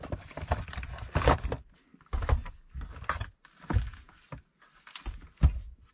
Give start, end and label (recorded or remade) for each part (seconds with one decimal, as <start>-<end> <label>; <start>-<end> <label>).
0.0-5.9 recorded